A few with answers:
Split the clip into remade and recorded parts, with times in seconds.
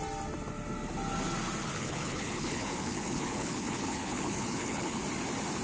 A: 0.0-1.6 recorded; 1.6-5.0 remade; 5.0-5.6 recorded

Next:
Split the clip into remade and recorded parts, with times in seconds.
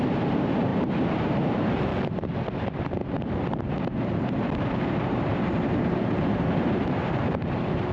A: 0.0-1.9 remade; 1.9-2.5 recorded; 2.5-3.0 remade; 3.0-3.5 recorded; 3.5-7.9 remade